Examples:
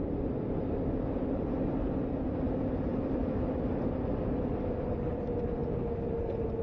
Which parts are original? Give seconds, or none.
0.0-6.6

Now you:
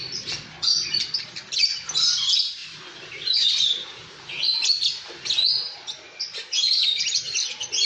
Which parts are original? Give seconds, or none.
0.0-7.9

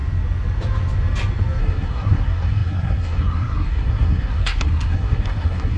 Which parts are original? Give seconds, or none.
0.0-1.6

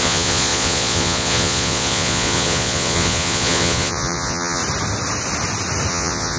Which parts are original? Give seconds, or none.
4.6-5.9

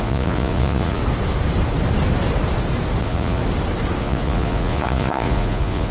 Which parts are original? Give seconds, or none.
1.0-3.0; 3.4-4.0

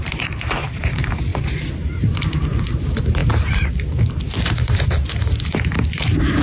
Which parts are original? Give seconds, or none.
none

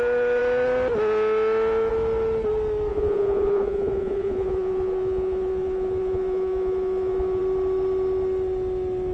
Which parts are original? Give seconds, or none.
0.0-2.9; 7.4-9.1